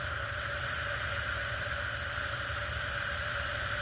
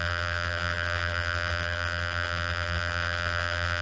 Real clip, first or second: first